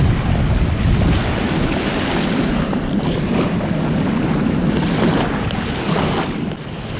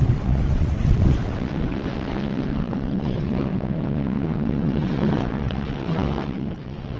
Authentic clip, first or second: first